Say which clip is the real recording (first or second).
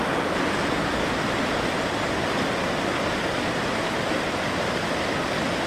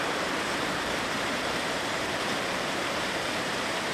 first